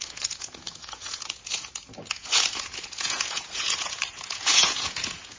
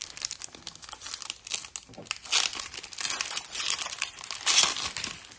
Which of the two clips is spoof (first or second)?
first